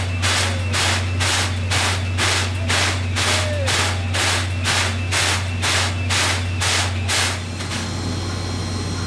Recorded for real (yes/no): yes